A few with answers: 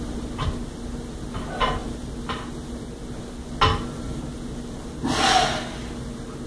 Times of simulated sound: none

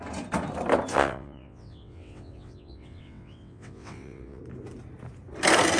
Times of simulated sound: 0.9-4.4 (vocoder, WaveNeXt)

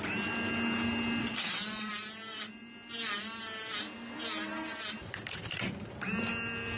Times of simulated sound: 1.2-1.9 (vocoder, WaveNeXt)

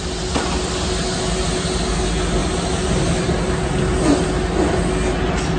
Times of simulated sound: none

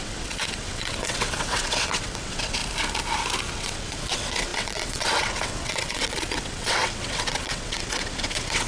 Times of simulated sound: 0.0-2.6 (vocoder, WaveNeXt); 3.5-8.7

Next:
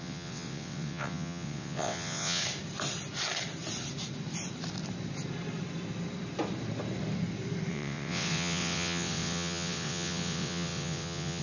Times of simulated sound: 0.0-2.4 (vocoder, WaveNeXt); 7.7-11.4